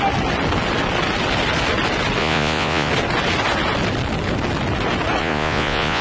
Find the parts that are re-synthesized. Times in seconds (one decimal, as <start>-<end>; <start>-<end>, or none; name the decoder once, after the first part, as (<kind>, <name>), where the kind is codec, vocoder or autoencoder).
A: 2.2-2.9 (vocoder, Vocos); 5.2-6.0